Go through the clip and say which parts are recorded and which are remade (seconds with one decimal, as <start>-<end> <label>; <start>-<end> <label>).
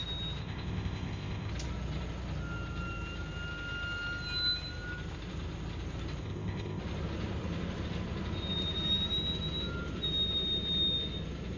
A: 0.0-0.4 recorded; 0.4-1.5 remade; 1.5-6.2 recorded; 6.2-6.8 remade; 6.8-11.6 recorded